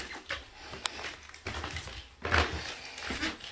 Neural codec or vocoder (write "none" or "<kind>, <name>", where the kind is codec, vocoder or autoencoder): none